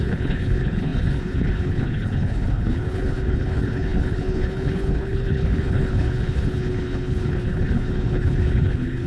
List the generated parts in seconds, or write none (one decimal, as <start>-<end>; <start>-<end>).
0.0-9.1